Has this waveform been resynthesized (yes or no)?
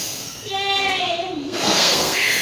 yes